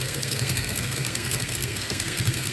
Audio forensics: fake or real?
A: fake